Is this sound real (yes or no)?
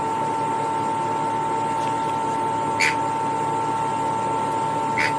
yes